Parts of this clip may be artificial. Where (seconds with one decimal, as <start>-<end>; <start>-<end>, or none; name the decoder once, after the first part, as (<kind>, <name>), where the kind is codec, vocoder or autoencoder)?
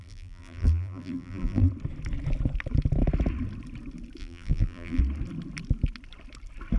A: 0.0-1.7 (vocoder, BigVGAN v2); 4.2-5.0